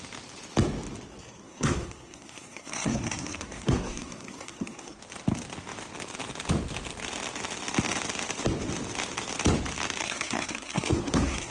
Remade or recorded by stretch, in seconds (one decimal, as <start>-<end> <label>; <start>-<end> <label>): 0.0-1.1 recorded; 1.1-5.0 remade; 5.0-10.0 recorded; 10.0-11.5 remade

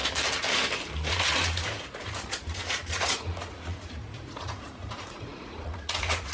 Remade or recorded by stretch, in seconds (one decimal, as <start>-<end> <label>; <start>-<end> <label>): 0.0-1.1 recorded; 1.1-6.3 remade

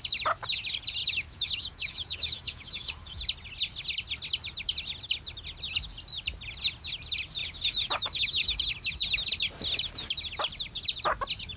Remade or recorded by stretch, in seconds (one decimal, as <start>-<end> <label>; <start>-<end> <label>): 0.0-1.0 recorded; 1.0-3.2 remade; 3.2-7.4 recorded; 7.4-8.6 remade; 8.6-11.6 recorded

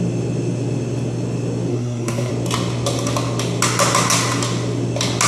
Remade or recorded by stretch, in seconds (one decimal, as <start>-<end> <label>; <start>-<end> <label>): 0.0-1.7 recorded; 1.7-2.3 remade; 2.3-5.3 recorded

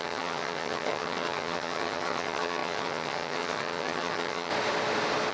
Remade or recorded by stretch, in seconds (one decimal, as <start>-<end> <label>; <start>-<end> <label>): 0.0-4.5 remade; 4.5-5.3 recorded

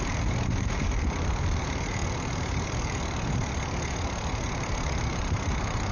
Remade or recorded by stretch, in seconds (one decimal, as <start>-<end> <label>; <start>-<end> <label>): 0.0-5.9 remade

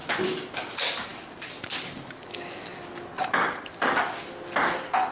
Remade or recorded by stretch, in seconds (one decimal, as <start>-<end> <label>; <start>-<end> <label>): 0.0-1.1 recorded; 1.1-4.2 remade; 4.2-5.1 recorded

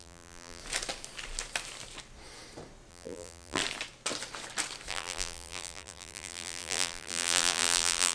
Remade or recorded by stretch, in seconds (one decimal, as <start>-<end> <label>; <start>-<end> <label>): 0.0-0.6 remade; 0.6-2.9 recorded; 2.9-3.6 remade; 3.6-4.9 recorded; 4.9-8.1 remade